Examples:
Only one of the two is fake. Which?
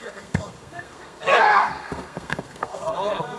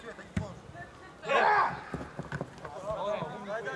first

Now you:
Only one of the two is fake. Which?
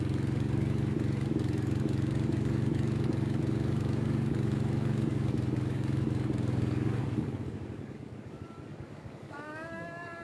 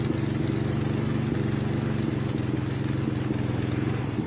first